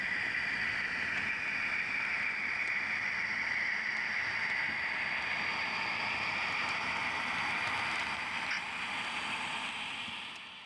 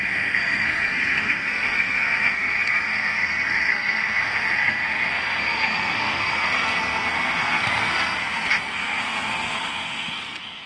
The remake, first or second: second